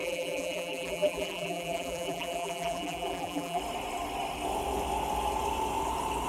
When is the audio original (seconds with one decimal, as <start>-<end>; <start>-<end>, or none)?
3.6-6.3